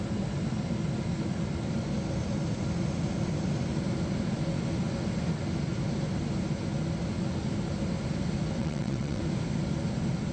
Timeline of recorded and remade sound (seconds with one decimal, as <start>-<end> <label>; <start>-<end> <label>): 0.0-8.6 recorded; 8.6-9.2 remade; 9.2-10.3 recorded